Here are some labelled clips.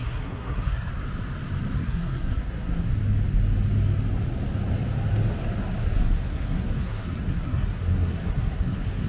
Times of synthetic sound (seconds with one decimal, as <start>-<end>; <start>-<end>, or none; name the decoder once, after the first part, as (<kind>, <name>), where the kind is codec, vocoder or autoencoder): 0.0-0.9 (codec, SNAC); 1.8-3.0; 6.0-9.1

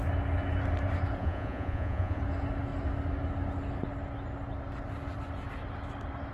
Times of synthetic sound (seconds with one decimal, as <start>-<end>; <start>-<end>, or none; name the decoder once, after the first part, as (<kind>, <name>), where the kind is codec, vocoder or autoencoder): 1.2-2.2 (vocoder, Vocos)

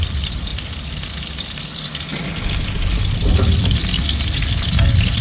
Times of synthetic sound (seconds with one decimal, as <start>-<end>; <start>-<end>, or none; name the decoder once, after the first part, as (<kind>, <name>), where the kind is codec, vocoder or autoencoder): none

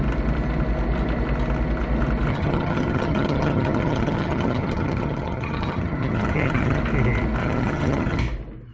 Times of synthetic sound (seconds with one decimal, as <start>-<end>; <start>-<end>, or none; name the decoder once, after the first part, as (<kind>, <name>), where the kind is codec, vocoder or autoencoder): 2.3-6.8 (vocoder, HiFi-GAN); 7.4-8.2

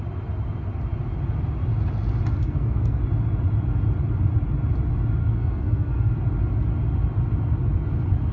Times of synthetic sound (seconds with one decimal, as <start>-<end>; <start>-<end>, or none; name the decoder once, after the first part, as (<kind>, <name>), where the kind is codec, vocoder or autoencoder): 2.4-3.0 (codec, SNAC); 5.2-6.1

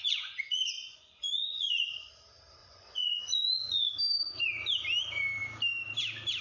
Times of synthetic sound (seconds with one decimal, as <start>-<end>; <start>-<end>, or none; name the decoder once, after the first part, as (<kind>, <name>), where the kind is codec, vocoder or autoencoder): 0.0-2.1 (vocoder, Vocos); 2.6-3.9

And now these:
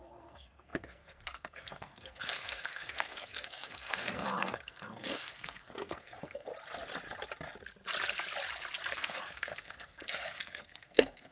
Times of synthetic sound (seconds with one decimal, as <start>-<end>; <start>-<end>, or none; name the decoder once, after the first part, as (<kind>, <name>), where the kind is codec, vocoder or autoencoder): 0.0-6.5 (codec, SNAC); 8.9-11.3

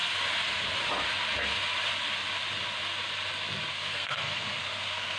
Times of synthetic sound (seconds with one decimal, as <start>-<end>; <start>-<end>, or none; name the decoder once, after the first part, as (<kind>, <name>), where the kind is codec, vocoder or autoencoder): 3.7-5.2 (codec, SNAC)